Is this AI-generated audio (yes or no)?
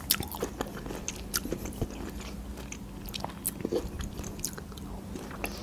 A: no